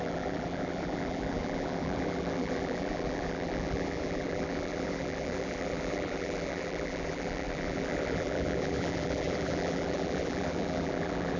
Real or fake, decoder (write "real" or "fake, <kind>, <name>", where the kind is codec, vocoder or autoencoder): fake, vocoder, BigVGAN v2